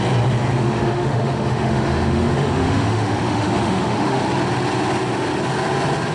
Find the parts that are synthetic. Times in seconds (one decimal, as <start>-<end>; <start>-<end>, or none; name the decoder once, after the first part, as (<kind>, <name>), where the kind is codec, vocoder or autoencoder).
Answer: 0.5-4.2 (autoencoder, DAC-VAE)